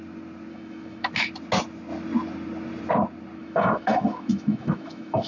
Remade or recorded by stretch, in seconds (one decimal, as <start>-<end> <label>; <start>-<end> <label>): 0.0-0.5 recorded; 0.5-1.1 remade; 1.1-3.4 recorded; 3.4-5.3 remade